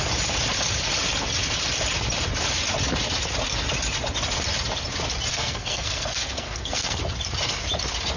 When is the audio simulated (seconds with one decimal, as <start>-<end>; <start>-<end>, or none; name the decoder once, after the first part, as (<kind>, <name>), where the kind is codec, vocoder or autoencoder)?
5.3-7.0 (codec, SNAC)